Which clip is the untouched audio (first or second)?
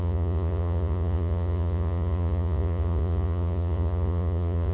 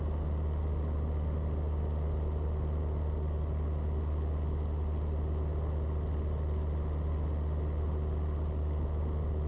second